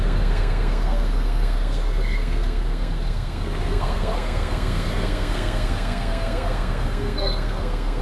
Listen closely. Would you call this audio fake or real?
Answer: fake